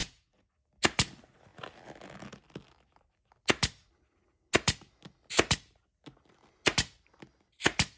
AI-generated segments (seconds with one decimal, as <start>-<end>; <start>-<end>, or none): 0.0-0.5